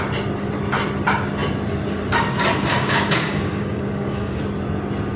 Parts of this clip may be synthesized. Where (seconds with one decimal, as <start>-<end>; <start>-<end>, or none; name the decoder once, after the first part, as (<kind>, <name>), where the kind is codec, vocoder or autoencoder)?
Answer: 2.7-4.4 (codec, DAC)